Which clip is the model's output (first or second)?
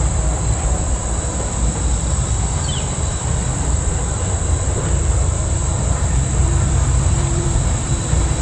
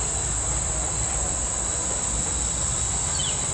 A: first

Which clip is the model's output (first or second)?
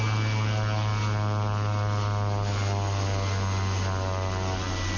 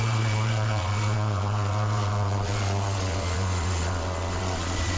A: second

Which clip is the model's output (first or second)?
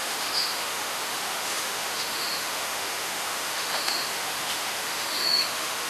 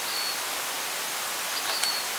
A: first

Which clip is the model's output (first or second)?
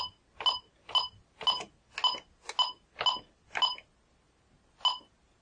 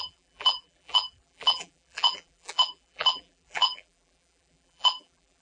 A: second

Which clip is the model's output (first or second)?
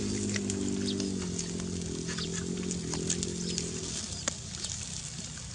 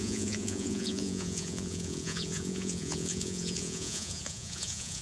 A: second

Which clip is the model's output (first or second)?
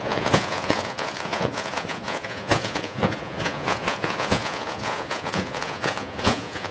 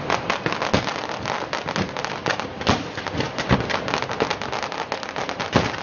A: first